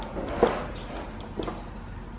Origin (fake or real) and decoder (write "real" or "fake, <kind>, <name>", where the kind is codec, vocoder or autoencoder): real